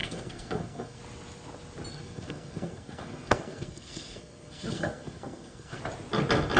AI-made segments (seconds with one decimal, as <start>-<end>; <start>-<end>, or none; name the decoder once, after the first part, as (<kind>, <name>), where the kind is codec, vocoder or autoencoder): 0.0-1.0 (codec, SNAC); 1.9-5.8